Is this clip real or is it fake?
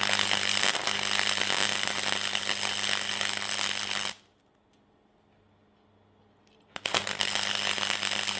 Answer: real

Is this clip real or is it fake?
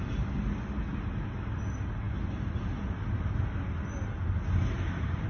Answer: real